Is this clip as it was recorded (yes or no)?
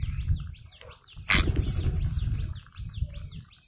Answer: yes